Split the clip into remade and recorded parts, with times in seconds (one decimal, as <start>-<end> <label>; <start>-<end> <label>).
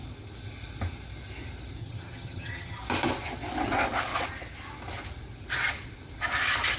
0.0-1.8 recorded; 1.8-2.8 remade; 2.8-6.8 recorded